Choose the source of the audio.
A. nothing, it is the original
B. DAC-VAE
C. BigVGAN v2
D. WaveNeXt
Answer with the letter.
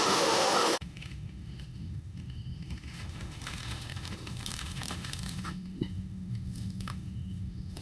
B